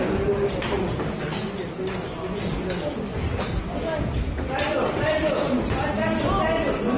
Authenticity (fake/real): fake